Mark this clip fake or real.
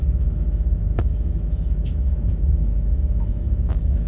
fake